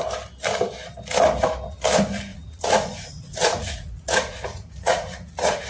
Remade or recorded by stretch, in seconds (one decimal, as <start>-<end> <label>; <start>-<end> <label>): 0.0-2.3 recorded; 2.3-5.7 remade